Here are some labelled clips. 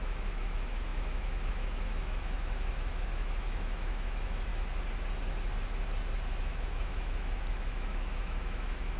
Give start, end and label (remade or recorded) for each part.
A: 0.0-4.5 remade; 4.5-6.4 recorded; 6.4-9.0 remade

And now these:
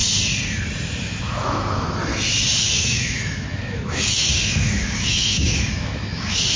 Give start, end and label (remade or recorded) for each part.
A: 0.0-1.0 recorded; 1.0-2.1 remade; 2.1-2.6 recorded; 2.6-6.6 remade

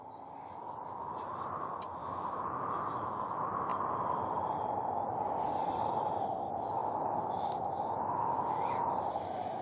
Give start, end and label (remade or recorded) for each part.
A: 0.0-2.0 recorded; 2.0-2.7 remade; 2.7-6.8 recorded; 6.8-8.9 remade; 8.9-9.6 recorded